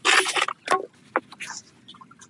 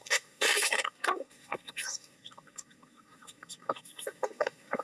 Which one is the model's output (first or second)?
second